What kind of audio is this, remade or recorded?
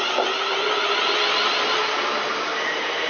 recorded